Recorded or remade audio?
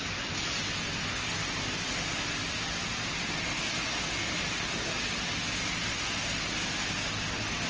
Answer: recorded